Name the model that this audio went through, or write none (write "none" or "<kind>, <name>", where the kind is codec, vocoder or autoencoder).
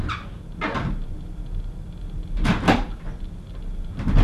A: none